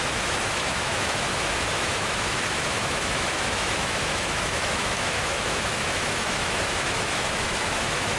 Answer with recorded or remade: remade